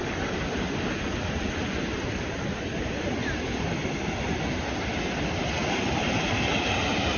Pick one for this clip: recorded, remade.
recorded